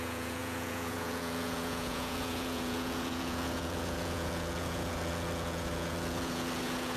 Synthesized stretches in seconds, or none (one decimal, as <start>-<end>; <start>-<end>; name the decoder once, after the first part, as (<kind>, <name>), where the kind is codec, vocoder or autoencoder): 0.0-7.0 (vocoder, Vocos)